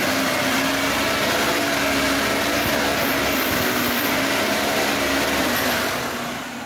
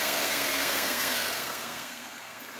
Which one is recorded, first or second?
first